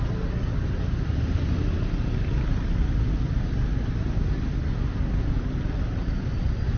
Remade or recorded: recorded